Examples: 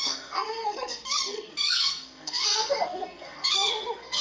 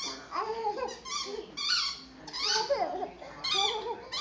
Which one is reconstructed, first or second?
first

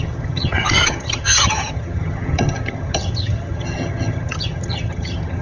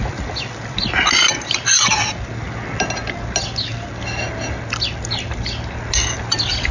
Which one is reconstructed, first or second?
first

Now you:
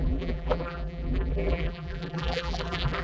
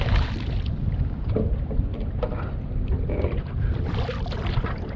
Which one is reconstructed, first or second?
first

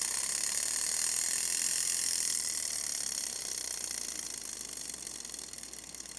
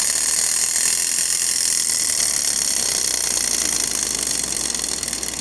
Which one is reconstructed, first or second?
first